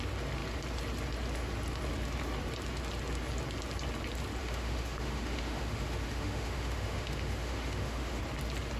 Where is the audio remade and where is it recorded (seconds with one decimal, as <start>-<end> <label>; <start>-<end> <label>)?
0.0-4.4 recorded; 4.4-8.2 remade; 8.2-8.8 recorded